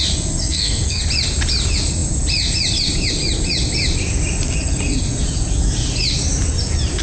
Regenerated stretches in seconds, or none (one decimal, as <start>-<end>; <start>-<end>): 0.4-1.0